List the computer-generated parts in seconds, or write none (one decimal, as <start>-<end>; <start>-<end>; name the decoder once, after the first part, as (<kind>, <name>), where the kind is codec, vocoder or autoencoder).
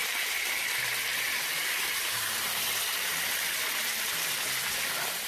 0.0-0.5 (vocoder, BigVGAN v2); 1.1-3.1